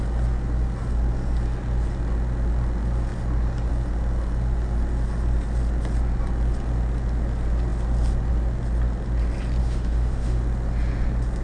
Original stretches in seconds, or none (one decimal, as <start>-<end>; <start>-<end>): 0.0-9.6; 10.4-11.4